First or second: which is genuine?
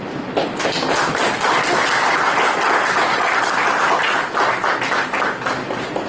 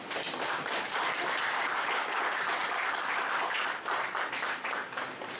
first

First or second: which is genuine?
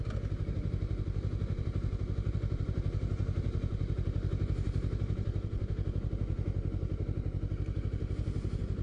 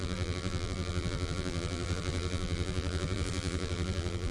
first